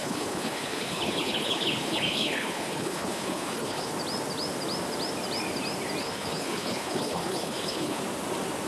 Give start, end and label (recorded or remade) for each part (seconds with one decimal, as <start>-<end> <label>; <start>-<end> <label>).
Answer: 0.0-3.9 remade; 3.9-6.0 recorded; 6.0-8.0 remade; 8.0-8.7 recorded